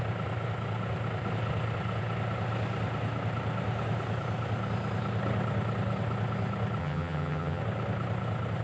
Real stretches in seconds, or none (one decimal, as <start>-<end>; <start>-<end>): 0.0-6.8; 7.6-8.6